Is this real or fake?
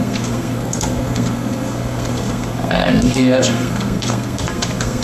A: fake